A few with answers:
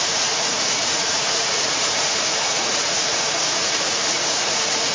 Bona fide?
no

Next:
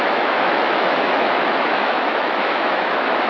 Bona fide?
no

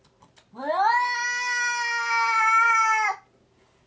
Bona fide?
yes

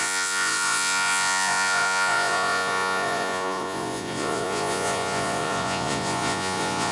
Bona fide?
no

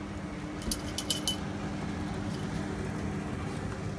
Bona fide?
yes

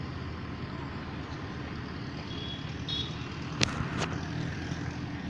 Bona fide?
yes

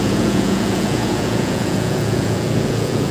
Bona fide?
no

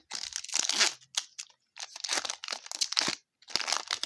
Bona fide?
yes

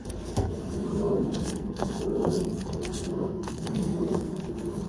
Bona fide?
no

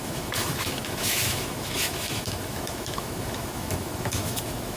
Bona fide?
no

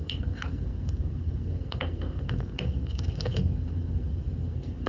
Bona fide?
no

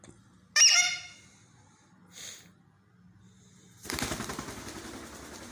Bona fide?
yes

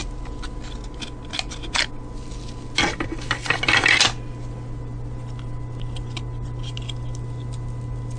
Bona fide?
yes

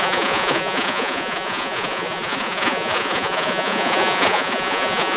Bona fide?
no